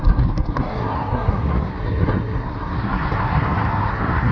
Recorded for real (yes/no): no